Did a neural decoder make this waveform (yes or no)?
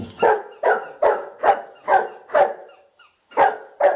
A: no